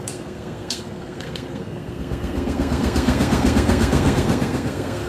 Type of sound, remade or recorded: remade